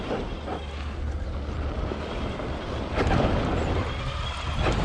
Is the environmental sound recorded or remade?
recorded